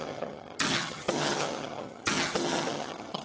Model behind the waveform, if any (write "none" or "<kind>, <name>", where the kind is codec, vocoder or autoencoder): vocoder, HiFi-GAN